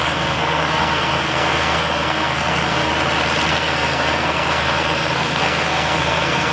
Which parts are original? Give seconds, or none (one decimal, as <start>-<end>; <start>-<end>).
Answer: 2.9-3.5

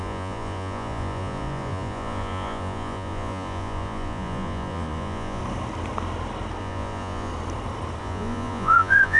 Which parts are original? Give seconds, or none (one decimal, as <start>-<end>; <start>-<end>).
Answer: 5.4-6.6; 7.3-8.0

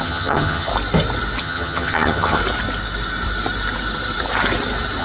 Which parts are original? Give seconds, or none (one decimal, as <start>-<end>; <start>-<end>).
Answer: 0.7-1.4; 2.4-5.0